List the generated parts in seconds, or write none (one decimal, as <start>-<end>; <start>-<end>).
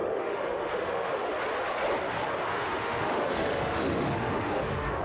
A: 0.0-1.2; 2.5-5.0